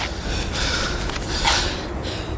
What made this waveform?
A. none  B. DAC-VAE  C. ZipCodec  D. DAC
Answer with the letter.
A